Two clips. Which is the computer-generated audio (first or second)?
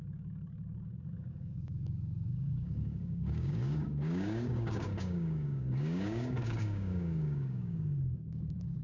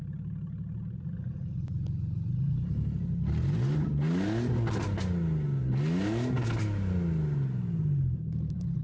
first